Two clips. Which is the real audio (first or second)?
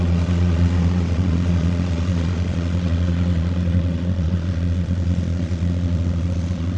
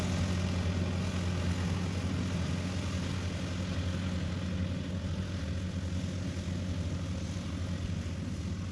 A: second